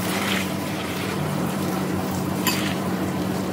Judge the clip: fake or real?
fake